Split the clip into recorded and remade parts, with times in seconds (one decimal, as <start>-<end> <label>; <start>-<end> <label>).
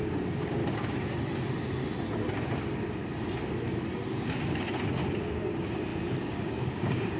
0.0-0.6 remade; 0.6-4.9 recorded; 4.9-7.2 remade